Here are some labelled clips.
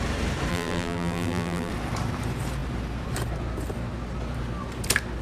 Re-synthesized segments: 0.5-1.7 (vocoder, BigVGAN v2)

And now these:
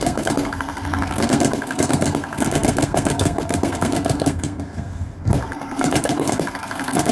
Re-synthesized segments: 0.0-7.1 (codec, SNAC)

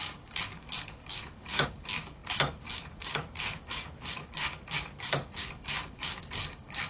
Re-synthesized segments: 0.0-6.9 (codec, DAC)

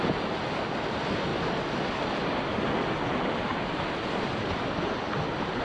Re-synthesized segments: none

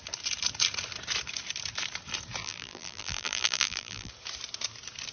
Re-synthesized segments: 2.4-4.1 (vocoder, BigVGAN v2)

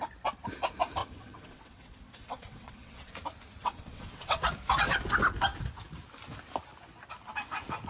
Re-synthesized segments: 1.0-3.1 (vocoder, WaveNeXt); 3.6-4.4